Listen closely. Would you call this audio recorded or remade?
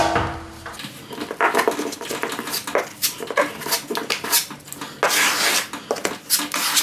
recorded